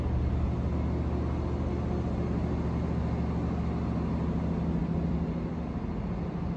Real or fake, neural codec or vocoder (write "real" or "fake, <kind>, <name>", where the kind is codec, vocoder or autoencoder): real